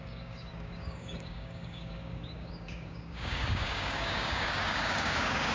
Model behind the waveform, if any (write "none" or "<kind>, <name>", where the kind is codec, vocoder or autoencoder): codec, DAC